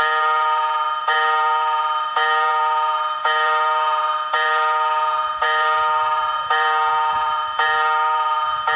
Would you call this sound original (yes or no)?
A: no